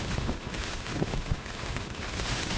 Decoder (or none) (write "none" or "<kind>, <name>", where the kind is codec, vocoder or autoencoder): autoencoder, DAC-VAE